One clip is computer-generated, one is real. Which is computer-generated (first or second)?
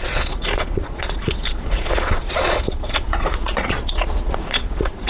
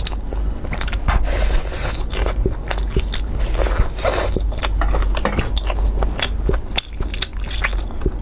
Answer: first